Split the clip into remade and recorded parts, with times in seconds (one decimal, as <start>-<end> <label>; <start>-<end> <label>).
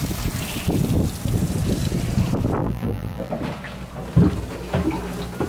0.0-2.6 recorded; 2.6-3.3 remade; 3.3-5.5 recorded